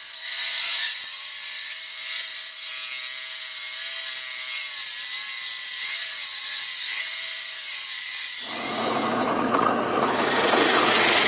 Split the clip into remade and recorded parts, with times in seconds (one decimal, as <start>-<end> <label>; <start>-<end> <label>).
0.0-2.7 remade; 2.7-5.7 recorded; 5.7-11.3 remade